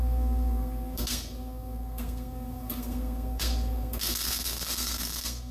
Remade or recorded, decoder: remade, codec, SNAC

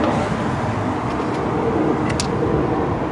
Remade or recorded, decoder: recorded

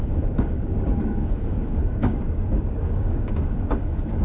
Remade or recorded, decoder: remade, codec, DAC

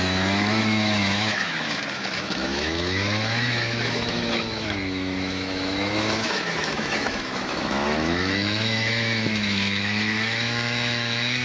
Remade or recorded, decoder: remade, autoencoder, DAC-VAE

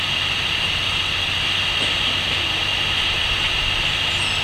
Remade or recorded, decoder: recorded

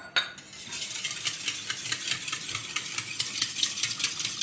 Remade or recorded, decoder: recorded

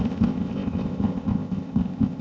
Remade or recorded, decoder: remade, codec, ZipCodec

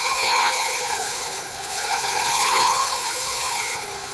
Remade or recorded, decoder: remade, codec, HILCodec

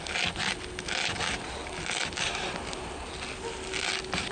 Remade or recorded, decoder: recorded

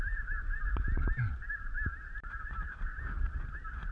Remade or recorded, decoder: recorded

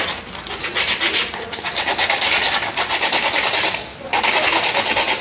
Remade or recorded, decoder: recorded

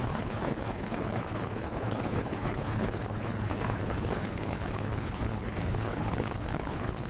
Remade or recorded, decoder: remade, codec, HILCodec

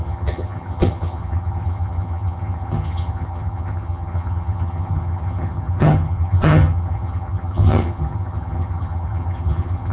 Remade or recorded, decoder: remade, vocoder, HiFi-GAN